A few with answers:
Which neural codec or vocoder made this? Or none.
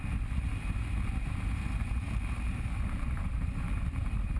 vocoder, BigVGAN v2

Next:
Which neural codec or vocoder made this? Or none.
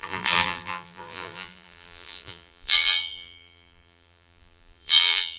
vocoder, BigVGAN v2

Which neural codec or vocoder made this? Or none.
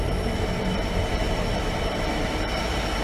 vocoder, BigVGAN v2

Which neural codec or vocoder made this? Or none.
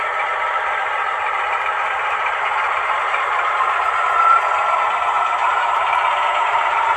vocoder, BigVGAN v2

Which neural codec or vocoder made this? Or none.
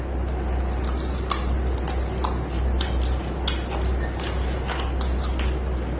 none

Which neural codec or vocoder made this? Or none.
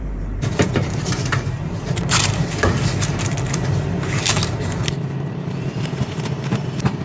vocoder, BigVGAN v2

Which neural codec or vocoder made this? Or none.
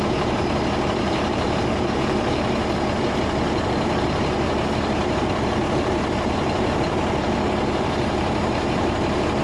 vocoder, BigVGAN v2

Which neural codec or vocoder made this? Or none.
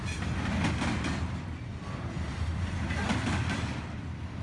none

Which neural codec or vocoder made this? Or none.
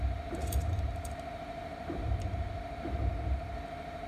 vocoder, BigVGAN v2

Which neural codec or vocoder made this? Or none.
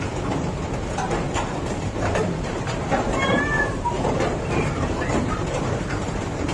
vocoder, BigVGAN v2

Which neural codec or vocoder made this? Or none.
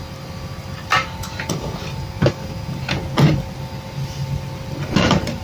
none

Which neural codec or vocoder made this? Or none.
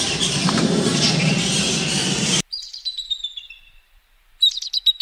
vocoder, BigVGAN v2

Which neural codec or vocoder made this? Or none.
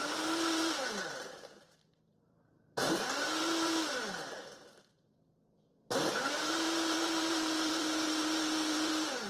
vocoder, BigVGAN v2